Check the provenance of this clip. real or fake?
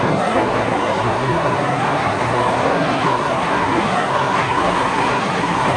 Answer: fake